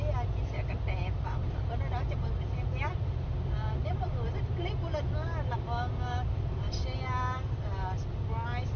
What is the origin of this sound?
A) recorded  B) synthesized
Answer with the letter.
A